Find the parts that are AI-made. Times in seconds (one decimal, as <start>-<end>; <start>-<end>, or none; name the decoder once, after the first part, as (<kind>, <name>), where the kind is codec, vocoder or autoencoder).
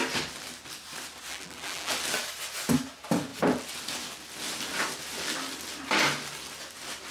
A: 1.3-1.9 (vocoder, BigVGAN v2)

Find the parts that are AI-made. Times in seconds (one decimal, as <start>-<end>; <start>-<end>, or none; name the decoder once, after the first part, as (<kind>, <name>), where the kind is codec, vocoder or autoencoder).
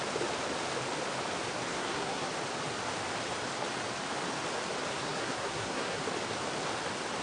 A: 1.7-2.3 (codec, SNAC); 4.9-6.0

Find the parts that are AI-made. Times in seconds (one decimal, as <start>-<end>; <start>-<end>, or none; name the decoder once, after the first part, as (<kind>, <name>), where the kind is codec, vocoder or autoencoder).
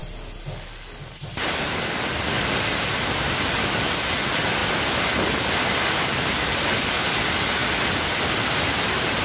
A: none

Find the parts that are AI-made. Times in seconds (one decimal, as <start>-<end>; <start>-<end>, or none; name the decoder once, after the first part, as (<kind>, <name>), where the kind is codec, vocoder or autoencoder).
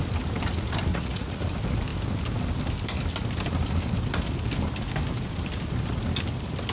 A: 0.9-1.4 (vocoder, Vocos)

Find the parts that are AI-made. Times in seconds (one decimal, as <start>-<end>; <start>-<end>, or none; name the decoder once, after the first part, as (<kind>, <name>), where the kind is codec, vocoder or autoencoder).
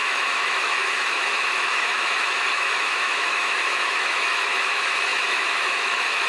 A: 0.0-6.3 (autoencoder, DAC-VAE)